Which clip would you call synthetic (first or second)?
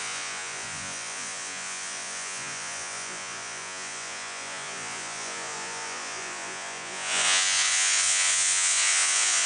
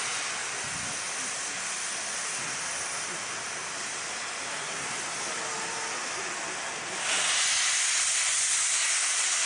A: first